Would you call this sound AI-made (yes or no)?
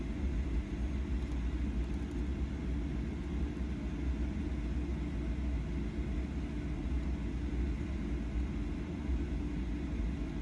no